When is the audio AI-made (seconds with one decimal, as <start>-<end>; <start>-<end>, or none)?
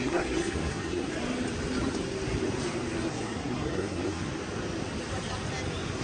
0.0-1.1; 3.1-4.3